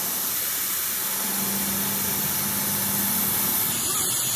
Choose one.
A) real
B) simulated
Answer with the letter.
A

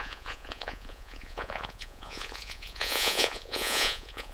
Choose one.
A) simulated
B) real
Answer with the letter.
A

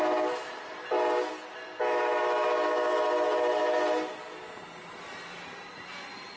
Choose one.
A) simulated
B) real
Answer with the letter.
B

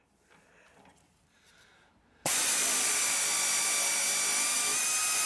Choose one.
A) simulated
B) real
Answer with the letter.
B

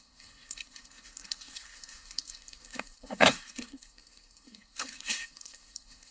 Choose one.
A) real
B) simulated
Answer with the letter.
B